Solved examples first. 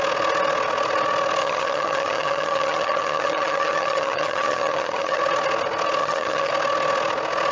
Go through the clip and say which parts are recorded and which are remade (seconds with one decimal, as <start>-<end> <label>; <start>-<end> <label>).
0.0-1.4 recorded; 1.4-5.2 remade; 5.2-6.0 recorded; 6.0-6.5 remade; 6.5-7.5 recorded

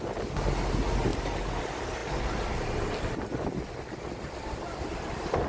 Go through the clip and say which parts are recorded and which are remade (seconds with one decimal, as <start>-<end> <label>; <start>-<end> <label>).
0.0-5.5 recorded

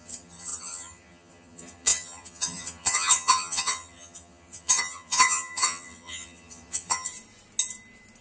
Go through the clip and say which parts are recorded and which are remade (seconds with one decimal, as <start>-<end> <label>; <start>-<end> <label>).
0.0-7.1 remade; 7.1-8.2 recorded

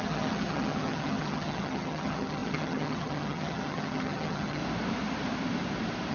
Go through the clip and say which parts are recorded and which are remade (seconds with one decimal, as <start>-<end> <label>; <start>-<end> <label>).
0.0-4.6 remade; 4.6-6.1 recorded

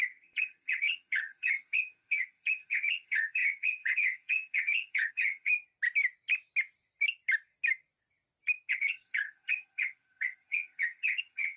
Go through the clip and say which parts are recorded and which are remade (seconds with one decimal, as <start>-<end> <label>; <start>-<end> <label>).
0.0-5.5 remade; 5.5-8.7 recorded; 8.7-11.6 remade